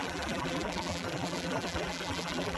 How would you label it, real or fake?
fake